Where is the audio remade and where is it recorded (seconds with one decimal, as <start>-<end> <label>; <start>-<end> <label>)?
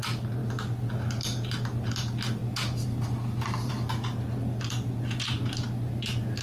0.0-6.4 recorded